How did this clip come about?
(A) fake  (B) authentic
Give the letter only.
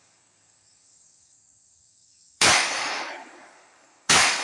A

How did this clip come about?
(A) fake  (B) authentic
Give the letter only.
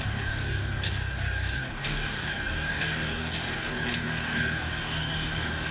A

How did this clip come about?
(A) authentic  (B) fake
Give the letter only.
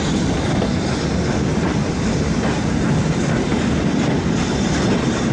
A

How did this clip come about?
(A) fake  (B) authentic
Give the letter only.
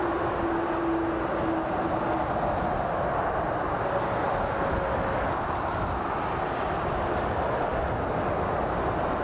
B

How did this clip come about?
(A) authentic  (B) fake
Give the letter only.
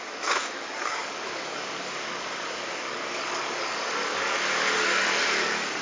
B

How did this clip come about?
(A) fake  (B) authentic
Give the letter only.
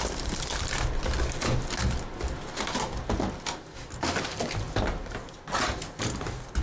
B